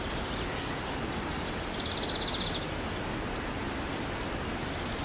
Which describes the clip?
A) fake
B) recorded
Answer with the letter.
B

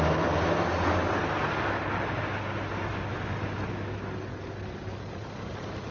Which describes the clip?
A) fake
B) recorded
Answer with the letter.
B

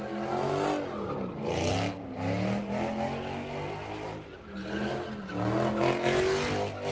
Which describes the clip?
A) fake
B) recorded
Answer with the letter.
B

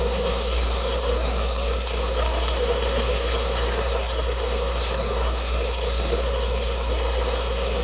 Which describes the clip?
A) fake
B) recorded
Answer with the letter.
A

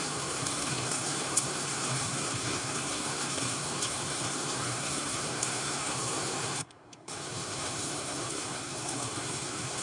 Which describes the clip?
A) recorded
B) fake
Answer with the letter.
B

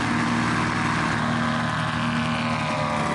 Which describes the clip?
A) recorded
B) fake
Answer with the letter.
A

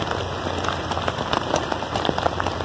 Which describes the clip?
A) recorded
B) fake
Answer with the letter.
A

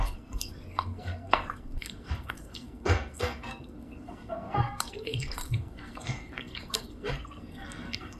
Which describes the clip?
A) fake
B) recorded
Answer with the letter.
A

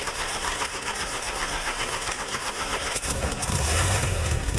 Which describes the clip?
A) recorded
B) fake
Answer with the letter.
B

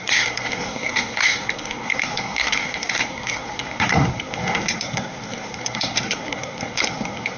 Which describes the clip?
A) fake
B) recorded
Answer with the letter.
A